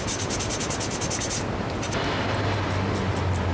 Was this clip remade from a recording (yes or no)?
no